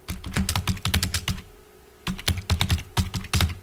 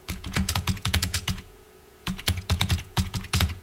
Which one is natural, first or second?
first